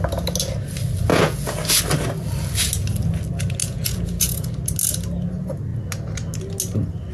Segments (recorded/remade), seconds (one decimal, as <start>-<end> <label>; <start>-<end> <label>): 0.0-1.1 recorded; 1.1-1.8 remade; 1.8-3.6 recorded; 3.6-4.5 remade; 4.5-7.1 recorded